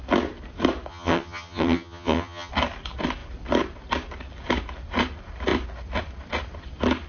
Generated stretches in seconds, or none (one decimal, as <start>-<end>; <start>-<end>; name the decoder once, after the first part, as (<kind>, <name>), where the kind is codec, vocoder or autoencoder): 0.9-2.5 (vocoder, HiFi-GAN)